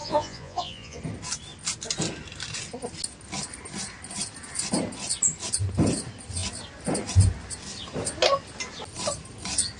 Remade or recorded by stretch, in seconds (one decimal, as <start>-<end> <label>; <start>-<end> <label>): 0.0-1.0 remade; 1.0-9.8 recorded